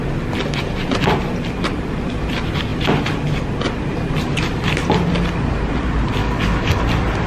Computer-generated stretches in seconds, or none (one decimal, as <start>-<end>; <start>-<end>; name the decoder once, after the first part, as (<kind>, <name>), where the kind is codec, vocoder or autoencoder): 6.2-6.8 (codec, DAC)